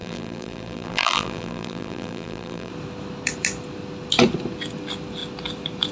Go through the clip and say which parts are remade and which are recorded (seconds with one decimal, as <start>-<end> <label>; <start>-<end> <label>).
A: 0.0-2.7 remade; 2.7-5.9 recorded